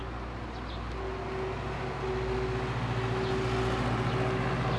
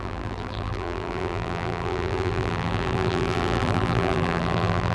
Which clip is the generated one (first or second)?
second